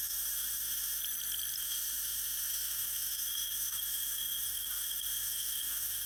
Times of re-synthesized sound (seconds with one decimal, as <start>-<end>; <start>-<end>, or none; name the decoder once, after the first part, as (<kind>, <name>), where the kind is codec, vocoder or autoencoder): 0.0-1.0 (autoencoder, DAC-VAE); 1.6-6.1